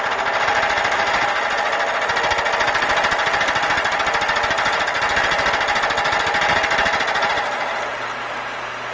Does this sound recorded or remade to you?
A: recorded